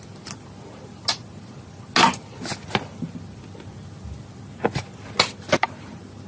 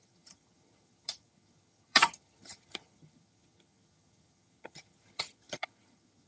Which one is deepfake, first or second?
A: second